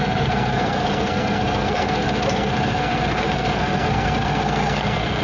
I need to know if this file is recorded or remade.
remade